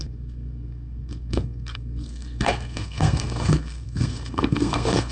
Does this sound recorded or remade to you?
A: remade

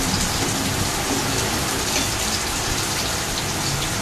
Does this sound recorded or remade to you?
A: remade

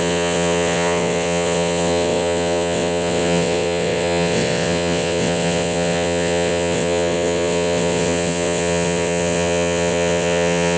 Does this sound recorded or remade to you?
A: remade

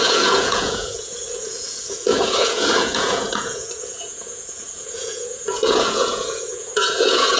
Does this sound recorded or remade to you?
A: remade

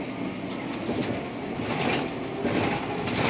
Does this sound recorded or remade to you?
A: recorded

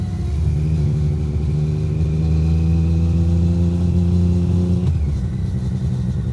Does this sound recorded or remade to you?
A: recorded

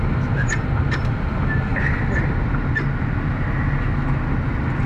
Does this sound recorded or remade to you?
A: recorded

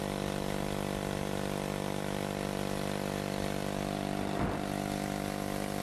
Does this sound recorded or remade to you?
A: recorded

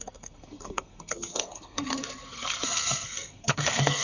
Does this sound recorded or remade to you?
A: remade